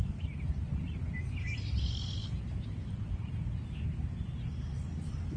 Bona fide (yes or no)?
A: yes